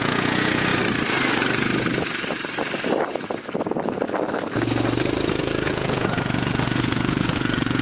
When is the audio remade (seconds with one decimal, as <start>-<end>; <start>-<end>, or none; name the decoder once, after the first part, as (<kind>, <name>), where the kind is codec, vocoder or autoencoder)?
0.0-0.7 (vocoder, Vocos); 5.4-7.8